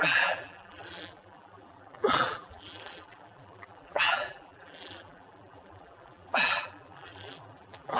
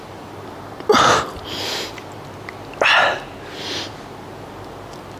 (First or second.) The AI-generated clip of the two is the first